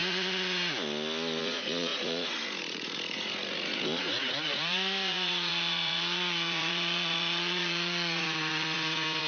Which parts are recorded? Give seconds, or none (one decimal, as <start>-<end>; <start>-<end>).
0.0-1.4